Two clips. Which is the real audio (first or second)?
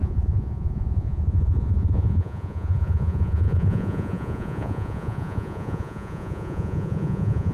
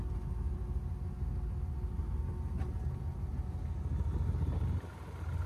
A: second